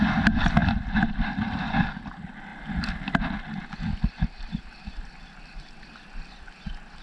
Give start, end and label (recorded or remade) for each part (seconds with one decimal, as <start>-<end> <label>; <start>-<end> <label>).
0.0-7.0 recorded